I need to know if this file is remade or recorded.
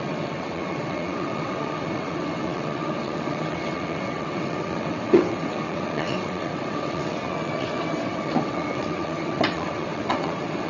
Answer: remade